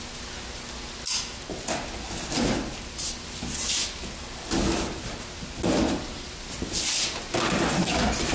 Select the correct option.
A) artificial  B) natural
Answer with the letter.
B